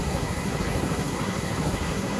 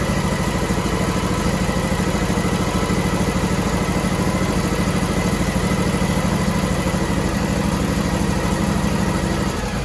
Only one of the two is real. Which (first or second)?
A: second